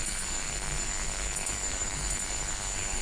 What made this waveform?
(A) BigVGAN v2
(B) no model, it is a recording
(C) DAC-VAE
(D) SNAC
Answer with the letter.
D